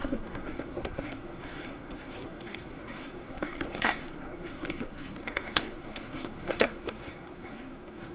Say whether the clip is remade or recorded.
remade